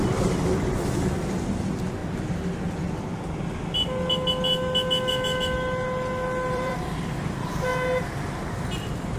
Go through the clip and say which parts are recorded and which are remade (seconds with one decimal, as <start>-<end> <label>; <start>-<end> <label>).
0.0-2.0 remade; 2.0-6.5 recorded; 6.5-7.7 remade; 7.7-8.6 recorded; 8.6-9.2 remade